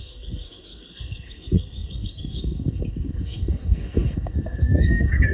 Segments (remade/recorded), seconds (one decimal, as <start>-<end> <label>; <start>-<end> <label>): 0.0-5.3 remade